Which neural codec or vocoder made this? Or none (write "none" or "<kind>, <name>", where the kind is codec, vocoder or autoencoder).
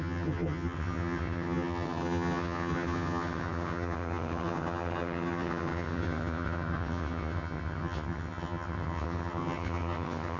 vocoder, HiFi-GAN